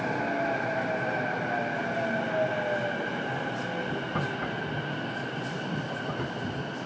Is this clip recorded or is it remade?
recorded